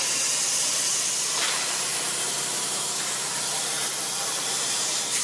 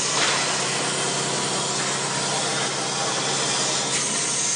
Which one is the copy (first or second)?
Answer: first